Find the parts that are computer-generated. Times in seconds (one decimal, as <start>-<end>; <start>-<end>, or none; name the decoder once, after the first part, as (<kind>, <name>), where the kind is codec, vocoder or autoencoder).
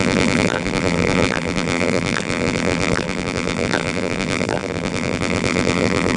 0.0-6.2 (vocoder, BigVGAN v2)